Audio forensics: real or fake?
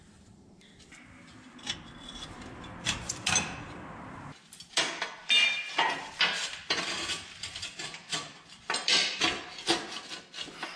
fake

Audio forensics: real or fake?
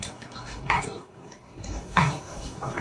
fake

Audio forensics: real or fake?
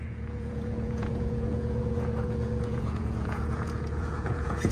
fake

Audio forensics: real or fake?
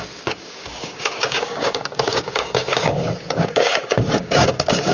fake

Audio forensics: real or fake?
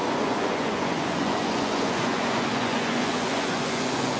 fake